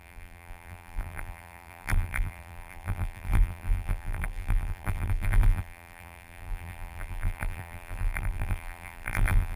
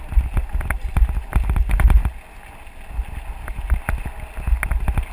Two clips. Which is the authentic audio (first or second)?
second